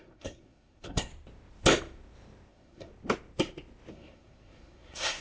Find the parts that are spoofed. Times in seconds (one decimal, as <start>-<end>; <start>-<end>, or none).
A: 0.0-1.1; 2.5-2.9; 3.9-5.2